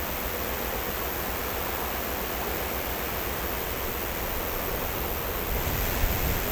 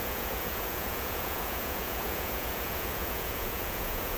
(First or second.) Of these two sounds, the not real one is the second